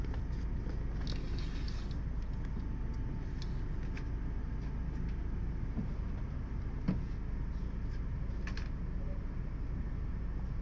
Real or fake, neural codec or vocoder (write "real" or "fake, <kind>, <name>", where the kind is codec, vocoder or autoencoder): real